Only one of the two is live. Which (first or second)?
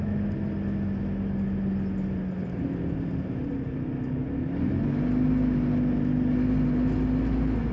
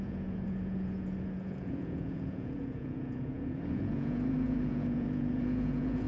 first